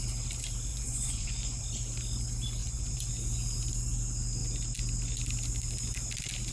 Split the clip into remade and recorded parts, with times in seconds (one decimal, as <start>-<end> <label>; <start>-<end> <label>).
0.0-0.7 recorded; 0.7-1.6 remade; 1.6-2.6 recorded; 2.6-3.1 remade; 3.1-6.5 recorded

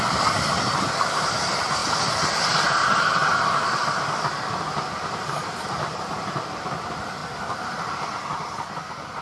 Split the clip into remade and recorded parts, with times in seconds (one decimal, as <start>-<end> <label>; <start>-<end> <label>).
0.0-1.8 remade; 1.8-2.5 recorded; 2.5-3.2 remade; 3.2-4.9 recorded; 4.9-9.2 remade

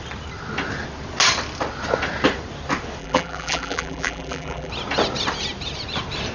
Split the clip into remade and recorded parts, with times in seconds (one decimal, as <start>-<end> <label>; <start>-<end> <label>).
0.0-3.0 recorded; 3.0-4.7 remade; 4.7-6.3 recorded

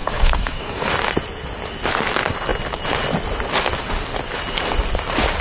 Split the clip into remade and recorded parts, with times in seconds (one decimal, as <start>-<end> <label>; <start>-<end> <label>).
0.0-0.9 remade; 0.9-5.4 recorded

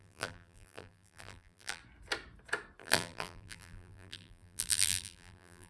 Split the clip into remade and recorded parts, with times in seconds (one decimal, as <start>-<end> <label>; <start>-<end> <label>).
0.0-1.8 remade; 1.8-2.8 recorded; 2.8-5.7 remade